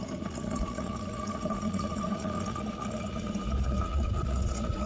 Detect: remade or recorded remade